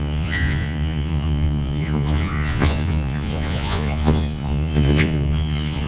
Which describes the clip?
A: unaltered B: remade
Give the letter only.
B